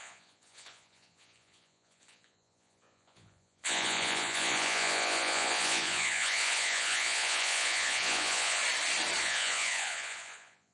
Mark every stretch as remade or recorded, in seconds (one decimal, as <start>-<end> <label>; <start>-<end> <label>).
0.0-8.6 remade; 8.6-9.2 recorded; 9.2-10.7 remade